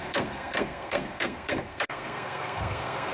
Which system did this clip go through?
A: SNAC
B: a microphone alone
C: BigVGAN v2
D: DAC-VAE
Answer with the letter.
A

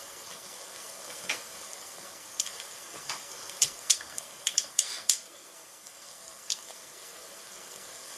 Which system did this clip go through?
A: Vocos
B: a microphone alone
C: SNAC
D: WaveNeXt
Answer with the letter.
C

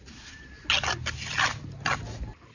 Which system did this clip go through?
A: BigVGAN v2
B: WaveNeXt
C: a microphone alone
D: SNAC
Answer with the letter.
C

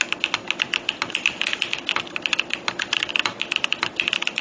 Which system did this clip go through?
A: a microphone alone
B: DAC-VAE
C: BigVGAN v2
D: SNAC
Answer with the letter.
A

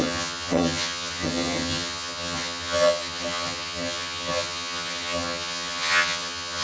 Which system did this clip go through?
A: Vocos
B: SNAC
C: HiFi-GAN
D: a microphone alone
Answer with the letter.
C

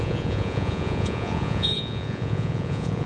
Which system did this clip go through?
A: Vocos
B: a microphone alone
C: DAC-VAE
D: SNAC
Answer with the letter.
A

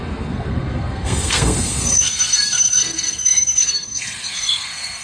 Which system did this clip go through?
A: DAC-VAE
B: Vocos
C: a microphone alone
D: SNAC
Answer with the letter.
D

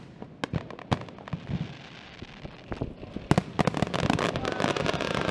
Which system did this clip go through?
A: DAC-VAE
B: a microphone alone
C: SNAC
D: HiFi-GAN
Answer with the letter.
B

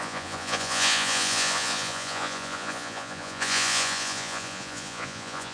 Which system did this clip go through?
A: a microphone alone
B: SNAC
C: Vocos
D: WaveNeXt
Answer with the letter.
C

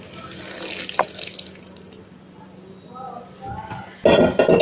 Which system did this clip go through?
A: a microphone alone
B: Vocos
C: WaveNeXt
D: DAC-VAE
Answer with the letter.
A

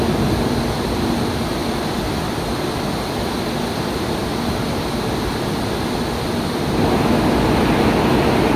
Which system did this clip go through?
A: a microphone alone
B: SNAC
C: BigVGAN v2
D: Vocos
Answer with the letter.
A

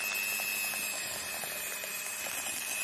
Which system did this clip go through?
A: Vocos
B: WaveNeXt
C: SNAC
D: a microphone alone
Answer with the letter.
D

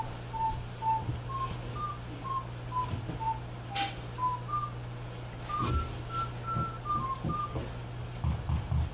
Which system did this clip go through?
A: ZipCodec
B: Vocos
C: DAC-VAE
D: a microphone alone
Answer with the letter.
D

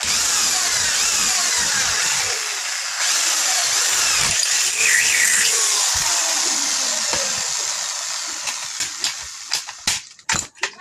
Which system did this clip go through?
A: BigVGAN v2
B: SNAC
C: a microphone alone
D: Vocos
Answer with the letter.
C